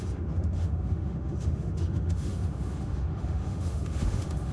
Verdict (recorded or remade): remade